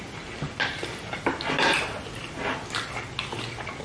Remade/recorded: recorded